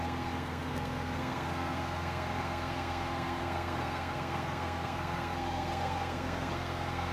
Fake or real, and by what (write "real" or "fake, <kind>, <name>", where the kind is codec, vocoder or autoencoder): fake, codec, SNAC